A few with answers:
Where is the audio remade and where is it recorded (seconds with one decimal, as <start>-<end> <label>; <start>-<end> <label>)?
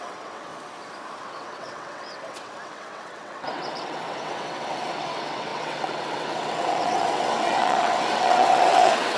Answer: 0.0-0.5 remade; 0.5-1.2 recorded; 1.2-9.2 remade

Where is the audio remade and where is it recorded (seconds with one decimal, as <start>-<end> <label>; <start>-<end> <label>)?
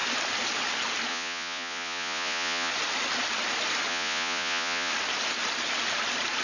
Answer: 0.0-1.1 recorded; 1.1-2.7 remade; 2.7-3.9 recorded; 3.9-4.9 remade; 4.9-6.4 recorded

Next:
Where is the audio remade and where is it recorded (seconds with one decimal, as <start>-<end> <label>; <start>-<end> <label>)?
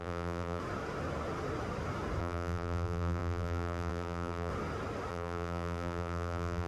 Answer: 0.0-0.6 remade; 0.6-2.2 recorded; 2.2-4.5 remade; 4.5-5.1 recorded; 5.1-6.7 remade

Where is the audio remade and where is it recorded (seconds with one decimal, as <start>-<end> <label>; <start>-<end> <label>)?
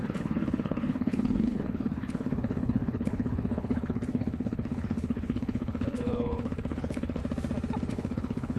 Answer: 0.0-7.2 remade; 7.2-7.9 recorded; 7.9-8.6 remade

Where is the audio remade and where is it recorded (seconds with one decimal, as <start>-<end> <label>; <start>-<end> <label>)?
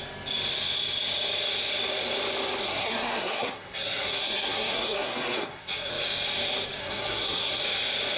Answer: 0.0-2.6 recorded; 2.6-5.9 remade; 5.9-6.8 recorded; 6.8-7.6 remade; 7.6-8.2 recorded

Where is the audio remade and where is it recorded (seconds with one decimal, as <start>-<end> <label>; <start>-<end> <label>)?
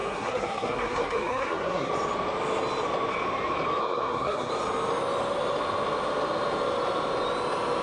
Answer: 0.0-1.9 remade; 1.9-3.8 recorded; 3.8-4.5 remade; 4.5-7.8 recorded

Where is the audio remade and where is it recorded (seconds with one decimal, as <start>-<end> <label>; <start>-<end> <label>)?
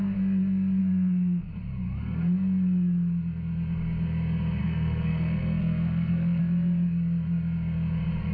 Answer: 0.0-0.8 recorded; 0.8-1.5 remade; 1.5-4.6 recorded; 4.6-6.4 remade; 6.4-8.3 recorded